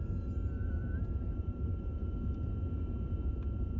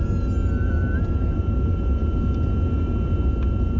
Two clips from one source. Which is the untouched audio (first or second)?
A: second